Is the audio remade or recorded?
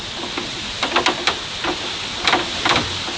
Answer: recorded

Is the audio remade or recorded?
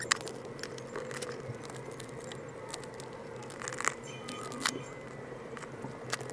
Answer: recorded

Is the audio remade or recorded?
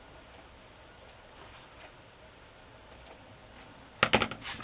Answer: recorded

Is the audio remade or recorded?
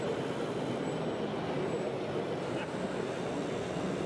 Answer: recorded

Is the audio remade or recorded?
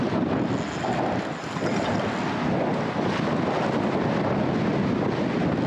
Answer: recorded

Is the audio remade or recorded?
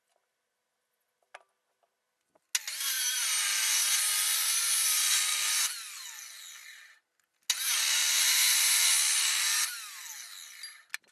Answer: recorded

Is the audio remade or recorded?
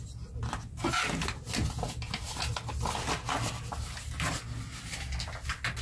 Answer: recorded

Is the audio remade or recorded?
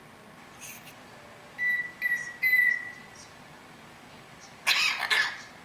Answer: recorded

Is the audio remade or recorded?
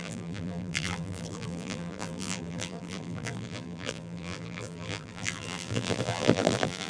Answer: remade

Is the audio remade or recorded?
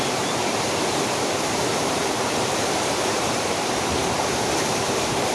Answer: remade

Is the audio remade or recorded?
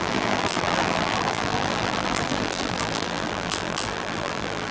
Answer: remade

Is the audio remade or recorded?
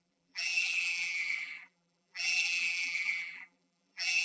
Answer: remade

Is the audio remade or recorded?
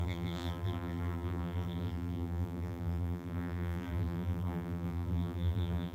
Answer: remade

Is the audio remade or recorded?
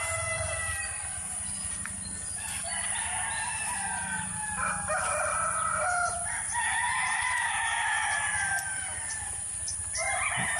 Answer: recorded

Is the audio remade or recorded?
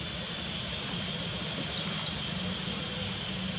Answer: recorded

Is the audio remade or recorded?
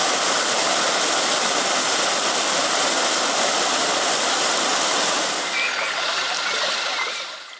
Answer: recorded